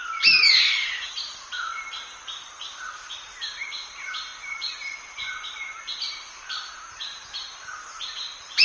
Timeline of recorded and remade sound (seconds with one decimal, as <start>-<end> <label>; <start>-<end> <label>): 0.0-1.9 remade; 1.9-2.5 recorded; 2.5-8.6 remade

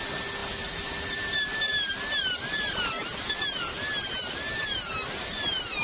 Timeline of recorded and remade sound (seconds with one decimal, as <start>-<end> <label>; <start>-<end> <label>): 0.0-5.8 recorded

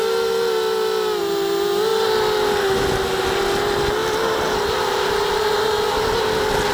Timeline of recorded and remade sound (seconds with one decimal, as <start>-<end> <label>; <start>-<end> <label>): 0.0-4.0 recorded; 4.0-5.4 remade; 5.4-6.7 recorded

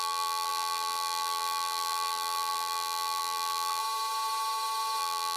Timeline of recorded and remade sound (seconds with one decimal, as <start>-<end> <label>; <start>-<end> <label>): 0.0-3.8 remade; 3.8-5.0 recorded; 5.0-5.4 remade

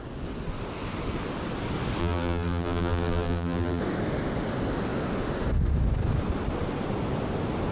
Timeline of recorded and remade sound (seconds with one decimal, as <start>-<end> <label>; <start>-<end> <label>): 0.0-2.0 recorded; 2.0-3.8 remade; 3.8-7.7 recorded

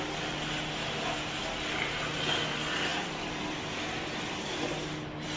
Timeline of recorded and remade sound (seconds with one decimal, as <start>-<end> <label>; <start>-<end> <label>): 0.0-5.4 recorded

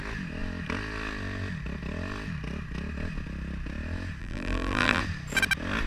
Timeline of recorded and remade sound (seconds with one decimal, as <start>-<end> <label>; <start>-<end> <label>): 0.0-4.2 recorded; 4.2-5.0 remade; 5.0-5.9 recorded

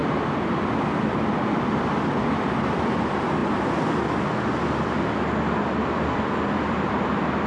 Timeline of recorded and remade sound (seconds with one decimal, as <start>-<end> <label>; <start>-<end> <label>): 0.0-2.2 recorded; 2.2-3.4 remade; 3.4-5.9 recorded; 5.9-7.5 remade